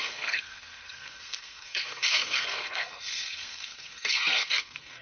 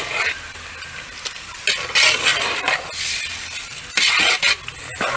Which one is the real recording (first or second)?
second